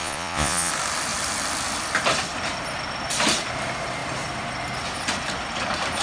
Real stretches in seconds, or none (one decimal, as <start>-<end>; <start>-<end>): 0.7-6.0